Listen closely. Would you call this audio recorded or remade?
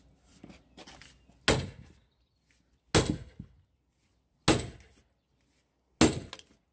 recorded